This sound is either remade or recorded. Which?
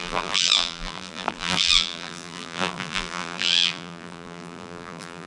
remade